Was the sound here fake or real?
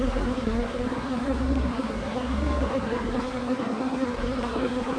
fake